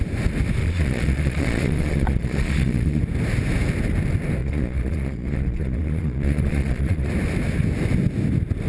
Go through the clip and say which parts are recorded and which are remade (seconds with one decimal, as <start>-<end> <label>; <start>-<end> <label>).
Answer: 0.0-0.6 recorded; 0.6-3.0 remade; 3.0-4.4 recorded; 4.4-7.1 remade; 7.1-8.7 recorded